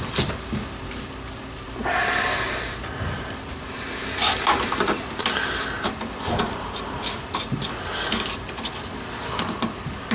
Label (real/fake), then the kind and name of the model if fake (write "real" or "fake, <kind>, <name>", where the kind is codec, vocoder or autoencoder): real